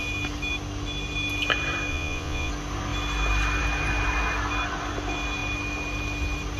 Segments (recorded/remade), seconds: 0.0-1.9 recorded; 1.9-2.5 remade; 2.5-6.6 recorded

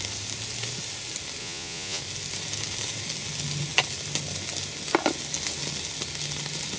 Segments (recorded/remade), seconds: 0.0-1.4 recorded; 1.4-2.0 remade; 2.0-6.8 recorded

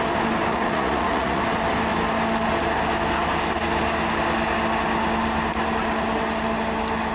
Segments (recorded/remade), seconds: 0.0-0.5 recorded; 0.5-1.4 remade; 1.4-7.1 recorded

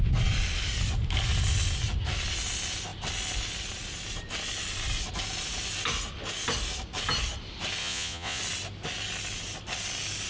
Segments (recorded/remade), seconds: 0.0-7.8 recorded; 7.8-8.4 remade; 8.4-10.3 recorded

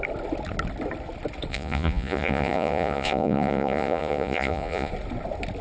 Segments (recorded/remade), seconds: 0.0-1.5 recorded; 1.5-4.9 remade; 4.9-5.6 recorded